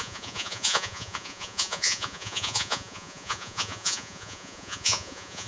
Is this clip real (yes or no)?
no